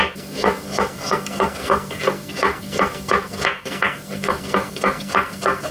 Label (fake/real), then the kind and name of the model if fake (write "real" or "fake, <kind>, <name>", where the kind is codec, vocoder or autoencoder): fake, codec, SNAC